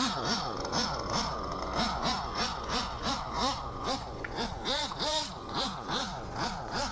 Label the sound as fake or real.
fake